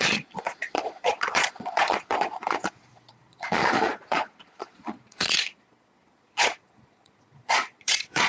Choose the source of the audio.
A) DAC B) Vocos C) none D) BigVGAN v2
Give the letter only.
B